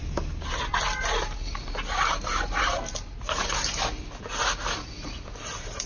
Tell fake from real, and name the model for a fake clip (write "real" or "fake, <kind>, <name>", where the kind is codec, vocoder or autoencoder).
real